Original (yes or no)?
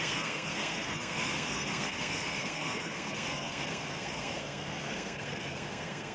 no